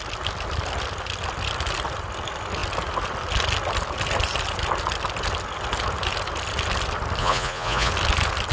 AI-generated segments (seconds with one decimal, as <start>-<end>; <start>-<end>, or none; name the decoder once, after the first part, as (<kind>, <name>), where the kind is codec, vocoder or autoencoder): 7.2-7.9 (vocoder, Vocos)